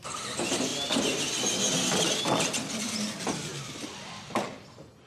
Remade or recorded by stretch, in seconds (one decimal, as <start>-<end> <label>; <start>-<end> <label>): 0.0-5.1 recorded